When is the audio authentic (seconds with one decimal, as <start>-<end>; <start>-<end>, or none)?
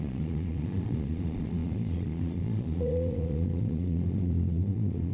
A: none